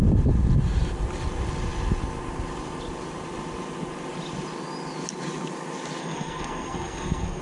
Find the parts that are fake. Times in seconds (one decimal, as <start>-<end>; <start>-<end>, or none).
6.0-7.4